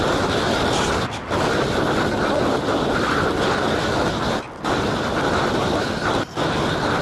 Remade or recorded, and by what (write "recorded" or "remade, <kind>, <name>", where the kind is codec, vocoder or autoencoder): recorded